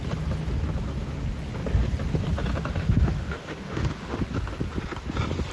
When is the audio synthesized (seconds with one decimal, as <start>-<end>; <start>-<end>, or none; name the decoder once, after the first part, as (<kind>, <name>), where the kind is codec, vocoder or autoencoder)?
2.8-4.2 (autoencoder, DAC-VAE)

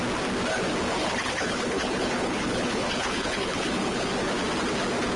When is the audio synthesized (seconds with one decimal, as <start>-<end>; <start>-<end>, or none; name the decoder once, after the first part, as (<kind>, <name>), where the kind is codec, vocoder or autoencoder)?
1.0-4.1 (codec, HILCodec)

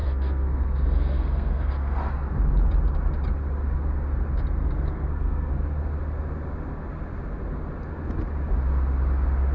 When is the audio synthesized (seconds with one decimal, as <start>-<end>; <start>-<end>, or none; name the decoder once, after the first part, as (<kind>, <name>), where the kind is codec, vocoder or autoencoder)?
0.0-2.1 (codec, SNAC); 4.6-5.5

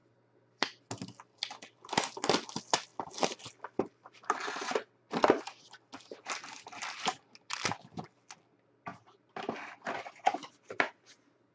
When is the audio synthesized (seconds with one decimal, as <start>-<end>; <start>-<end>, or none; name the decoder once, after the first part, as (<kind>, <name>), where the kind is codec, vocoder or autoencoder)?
none

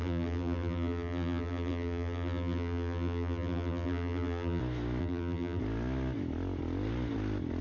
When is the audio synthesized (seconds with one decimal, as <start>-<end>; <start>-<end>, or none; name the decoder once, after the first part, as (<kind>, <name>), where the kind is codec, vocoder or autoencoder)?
0.0-4.6 (vocoder, BigVGAN v2); 5.0-5.6